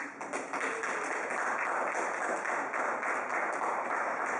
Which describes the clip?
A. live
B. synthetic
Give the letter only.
A